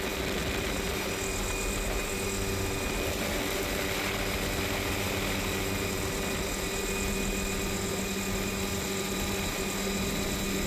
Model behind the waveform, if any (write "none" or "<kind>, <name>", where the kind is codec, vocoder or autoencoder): none